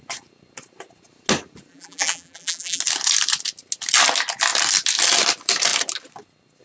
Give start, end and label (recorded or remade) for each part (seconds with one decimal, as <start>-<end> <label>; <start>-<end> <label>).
0.0-1.7 recorded; 1.7-2.8 remade; 2.8-6.6 recorded